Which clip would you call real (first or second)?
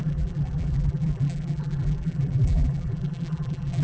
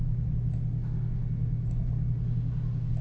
second